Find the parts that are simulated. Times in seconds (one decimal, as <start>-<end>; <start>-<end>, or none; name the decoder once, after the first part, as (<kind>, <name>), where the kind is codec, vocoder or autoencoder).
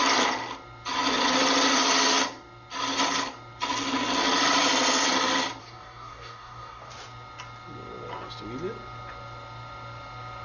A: 5.6-6.9 (codec, DAC)